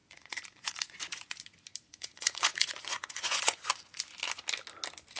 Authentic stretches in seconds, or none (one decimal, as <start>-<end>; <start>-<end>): 1.4-1.9; 3.7-5.2